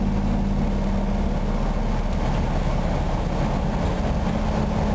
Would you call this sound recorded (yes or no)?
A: yes